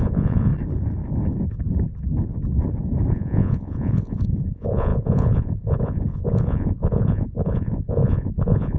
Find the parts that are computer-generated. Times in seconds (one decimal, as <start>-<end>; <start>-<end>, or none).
0.0-0.5; 3.1-8.8